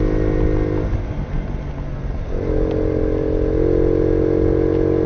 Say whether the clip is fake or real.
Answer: real